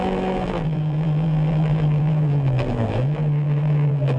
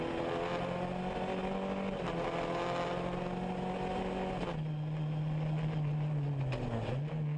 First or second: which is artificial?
first